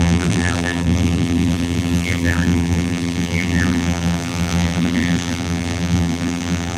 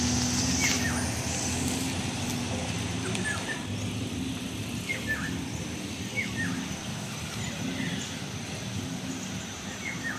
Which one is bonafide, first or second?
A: second